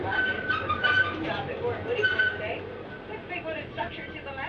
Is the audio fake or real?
real